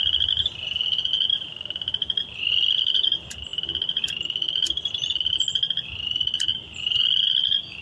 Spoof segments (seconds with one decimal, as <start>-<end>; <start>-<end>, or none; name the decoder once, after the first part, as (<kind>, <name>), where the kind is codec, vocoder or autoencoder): 1.3-2.5 (vocoder, BigVGAN v2)